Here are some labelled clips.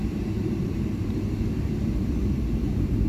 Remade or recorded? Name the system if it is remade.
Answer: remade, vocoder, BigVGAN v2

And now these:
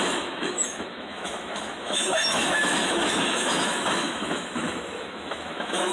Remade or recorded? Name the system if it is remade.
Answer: remade, autoencoder, DAC-VAE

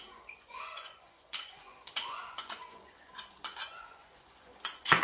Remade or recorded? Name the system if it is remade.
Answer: remade, vocoder, Vocos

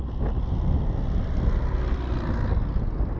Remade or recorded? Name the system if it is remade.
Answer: recorded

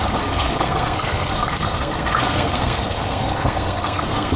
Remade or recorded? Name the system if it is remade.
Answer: remade, codec, SNAC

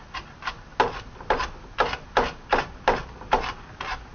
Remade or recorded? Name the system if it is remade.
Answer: recorded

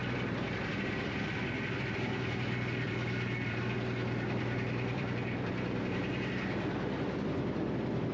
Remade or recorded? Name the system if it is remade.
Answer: remade, vocoder, BigVGAN v2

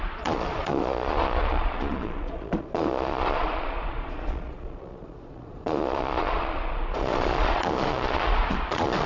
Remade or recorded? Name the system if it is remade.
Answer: remade, vocoder, Vocos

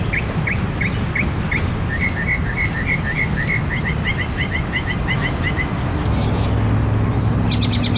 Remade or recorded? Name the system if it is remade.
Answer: recorded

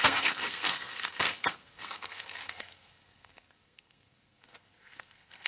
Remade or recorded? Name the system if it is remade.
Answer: remade, codec, SNAC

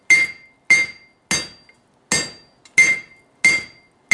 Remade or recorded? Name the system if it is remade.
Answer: recorded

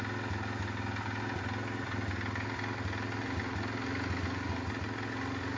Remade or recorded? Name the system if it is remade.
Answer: recorded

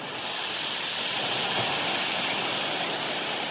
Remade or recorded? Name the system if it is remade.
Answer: recorded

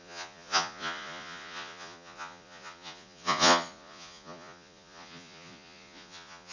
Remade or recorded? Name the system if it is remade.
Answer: remade, vocoder, Vocos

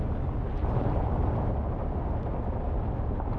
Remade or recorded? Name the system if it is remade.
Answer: recorded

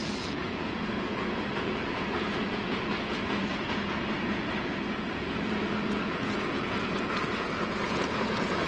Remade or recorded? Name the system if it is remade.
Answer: remade, vocoder, Vocos